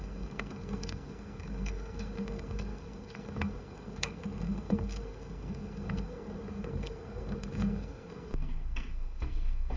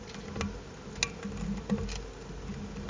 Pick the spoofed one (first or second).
first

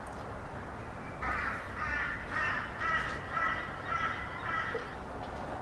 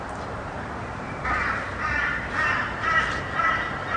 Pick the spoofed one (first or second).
second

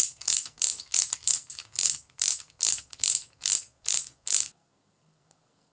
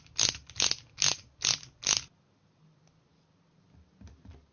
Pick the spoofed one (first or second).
first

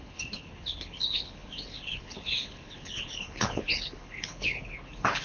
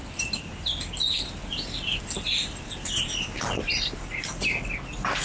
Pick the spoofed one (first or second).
first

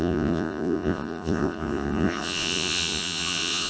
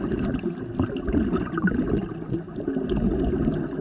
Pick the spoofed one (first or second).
first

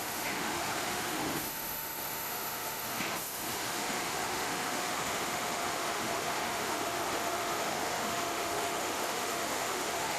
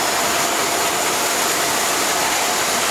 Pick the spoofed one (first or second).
first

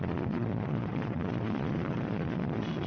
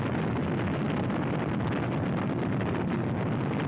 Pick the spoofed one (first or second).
first